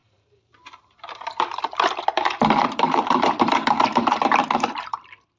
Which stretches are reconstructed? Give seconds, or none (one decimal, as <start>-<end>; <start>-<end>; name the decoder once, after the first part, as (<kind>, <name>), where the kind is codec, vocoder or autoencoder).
0.0-5.4 (vocoder, BigVGAN v2)